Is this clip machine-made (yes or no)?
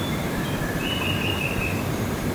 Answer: no